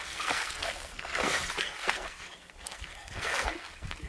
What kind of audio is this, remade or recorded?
remade